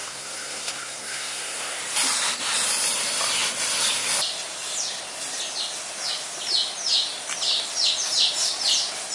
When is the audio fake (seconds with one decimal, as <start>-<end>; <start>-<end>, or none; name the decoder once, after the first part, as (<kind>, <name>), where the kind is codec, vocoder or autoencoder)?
0.0-1.8 (codec, SNAC)